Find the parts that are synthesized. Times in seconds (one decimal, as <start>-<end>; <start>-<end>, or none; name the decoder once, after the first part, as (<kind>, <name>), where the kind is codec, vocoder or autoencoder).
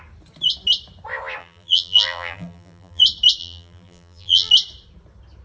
1.4-3.0 (vocoder, BigVGAN v2); 3.4-4.5